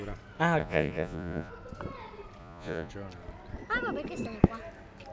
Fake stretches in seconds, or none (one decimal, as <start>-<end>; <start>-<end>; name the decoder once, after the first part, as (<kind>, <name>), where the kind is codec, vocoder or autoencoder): 0.6-1.5 (vocoder, Vocos); 2.4-2.9